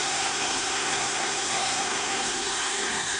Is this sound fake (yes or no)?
yes